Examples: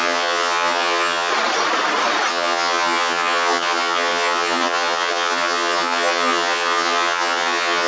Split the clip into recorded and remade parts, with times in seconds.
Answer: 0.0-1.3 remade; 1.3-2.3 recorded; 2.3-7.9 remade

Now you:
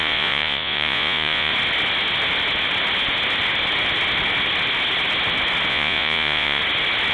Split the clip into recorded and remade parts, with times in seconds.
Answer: 0.0-1.5 remade; 1.5-5.7 recorded; 5.7-6.6 remade; 6.6-7.1 recorded

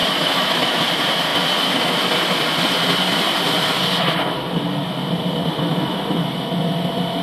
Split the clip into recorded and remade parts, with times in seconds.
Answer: 0.0-0.8 remade; 0.8-7.2 recorded

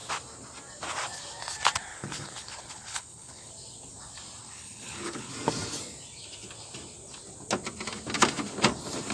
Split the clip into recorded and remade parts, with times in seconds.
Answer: 0.0-1.9 recorded; 1.9-3.5 remade; 3.5-4.4 recorded; 4.4-5.3 remade; 5.3-9.1 recorded